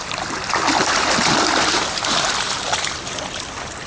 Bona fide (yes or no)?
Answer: yes